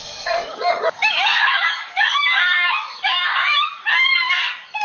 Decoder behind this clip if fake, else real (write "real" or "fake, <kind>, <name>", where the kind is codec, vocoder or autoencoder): fake, codec, DAC